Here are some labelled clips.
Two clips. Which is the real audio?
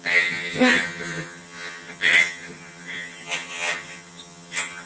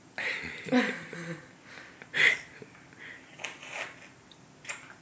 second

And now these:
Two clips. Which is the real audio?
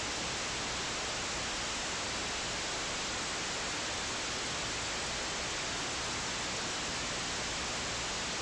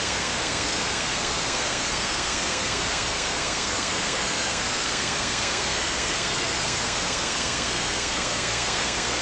first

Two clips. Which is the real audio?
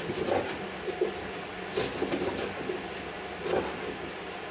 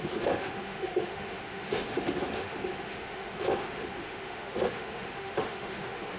first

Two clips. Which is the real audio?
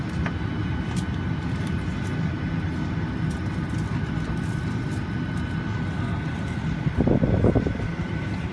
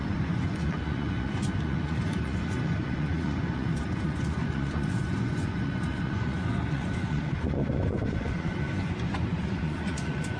first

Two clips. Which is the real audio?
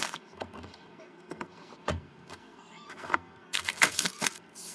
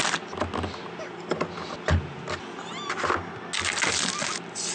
second